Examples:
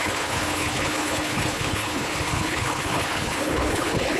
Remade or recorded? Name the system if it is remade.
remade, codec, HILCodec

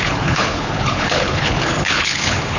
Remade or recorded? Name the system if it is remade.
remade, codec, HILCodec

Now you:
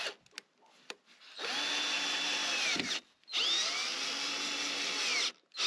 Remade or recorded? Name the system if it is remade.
recorded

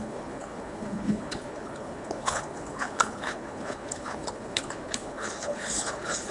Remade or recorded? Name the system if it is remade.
remade, codec, HILCodec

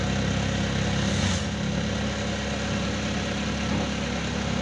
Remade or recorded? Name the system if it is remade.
recorded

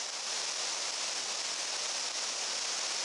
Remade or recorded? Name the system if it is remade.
recorded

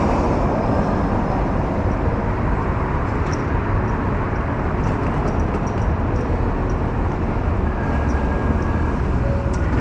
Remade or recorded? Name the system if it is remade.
recorded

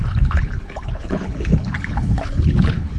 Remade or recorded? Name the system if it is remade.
remade, codec, HILCodec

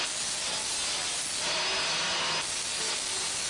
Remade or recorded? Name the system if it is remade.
recorded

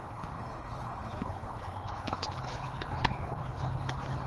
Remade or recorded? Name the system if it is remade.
remade, codec, HILCodec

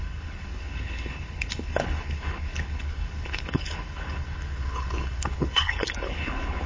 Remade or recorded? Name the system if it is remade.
remade, codec, HILCodec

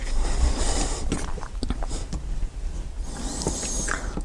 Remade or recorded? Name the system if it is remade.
recorded